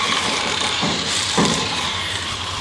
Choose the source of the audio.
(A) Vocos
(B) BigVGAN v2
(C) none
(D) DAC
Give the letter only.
B